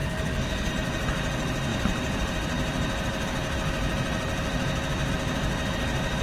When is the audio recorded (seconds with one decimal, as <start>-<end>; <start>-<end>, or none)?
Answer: 0.7-6.2